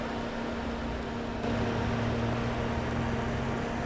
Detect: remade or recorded recorded